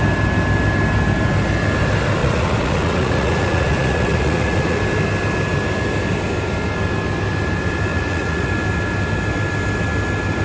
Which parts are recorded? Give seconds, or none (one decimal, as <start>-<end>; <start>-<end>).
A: 0.0-2.2; 4.8-7.9; 8.5-10.4